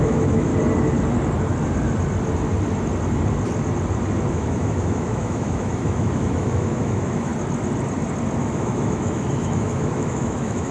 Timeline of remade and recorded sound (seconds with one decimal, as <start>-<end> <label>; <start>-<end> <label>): 0.0-0.5 remade; 0.5-4.3 recorded; 4.3-7.3 remade; 7.3-8.4 recorded; 8.4-10.7 remade